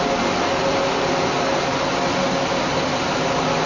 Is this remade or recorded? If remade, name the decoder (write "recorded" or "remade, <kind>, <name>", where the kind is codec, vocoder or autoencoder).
recorded